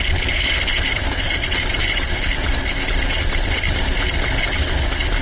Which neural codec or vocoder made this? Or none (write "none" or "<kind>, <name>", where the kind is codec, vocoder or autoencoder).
none